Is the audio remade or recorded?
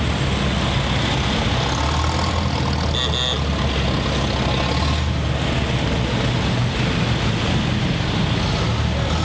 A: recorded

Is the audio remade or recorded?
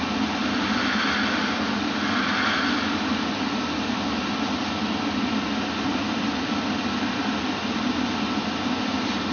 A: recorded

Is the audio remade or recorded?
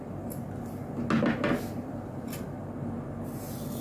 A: recorded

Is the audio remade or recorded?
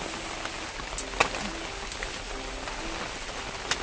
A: recorded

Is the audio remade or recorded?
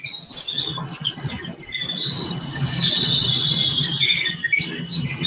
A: recorded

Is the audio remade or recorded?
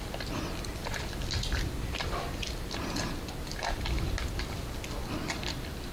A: recorded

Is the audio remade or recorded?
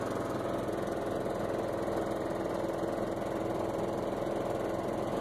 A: recorded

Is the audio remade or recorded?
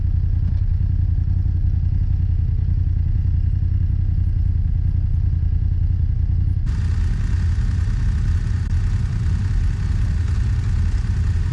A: recorded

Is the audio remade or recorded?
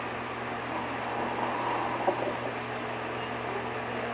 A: recorded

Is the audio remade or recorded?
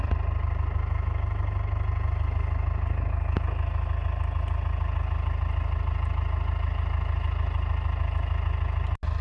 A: recorded